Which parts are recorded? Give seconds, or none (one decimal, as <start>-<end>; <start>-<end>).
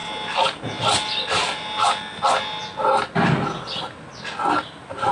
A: 0.0-5.1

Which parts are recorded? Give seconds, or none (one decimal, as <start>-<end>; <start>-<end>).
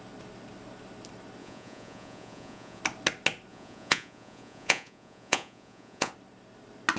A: 0.0-1.4; 2.8-3.5; 6.1-7.0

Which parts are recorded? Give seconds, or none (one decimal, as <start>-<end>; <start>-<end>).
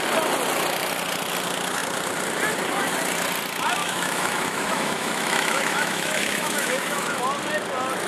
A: 0.0-3.8; 7.2-8.1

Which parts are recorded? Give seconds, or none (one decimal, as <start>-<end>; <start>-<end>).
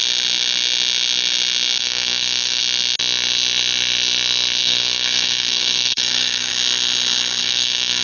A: 0.0-1.8; 2.6-4.6; 6.5-7.4